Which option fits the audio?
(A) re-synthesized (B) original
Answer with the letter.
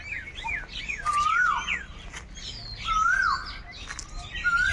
B